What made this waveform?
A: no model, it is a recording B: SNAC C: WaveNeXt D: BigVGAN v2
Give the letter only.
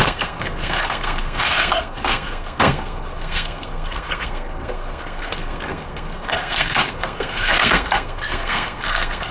B